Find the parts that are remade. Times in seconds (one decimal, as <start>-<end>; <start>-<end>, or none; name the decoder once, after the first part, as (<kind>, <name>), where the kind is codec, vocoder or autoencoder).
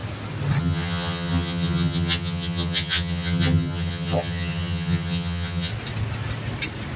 0.6-5.7 (vocoder, HiFi-GAN)